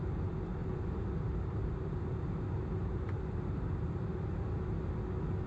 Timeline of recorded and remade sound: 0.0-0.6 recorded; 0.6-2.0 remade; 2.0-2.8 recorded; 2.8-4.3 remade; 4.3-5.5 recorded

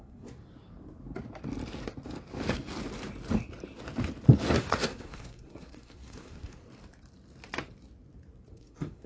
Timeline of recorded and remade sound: 0.0-0.4 remade; 0.4-4.6 recorded; 4.6-6.6 remade; 6.6-8.5 recorded; 8.5-9.1 remade

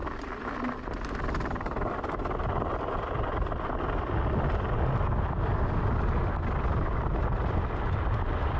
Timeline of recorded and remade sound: 0.0-8.6 recorded